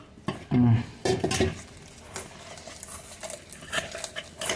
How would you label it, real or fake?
real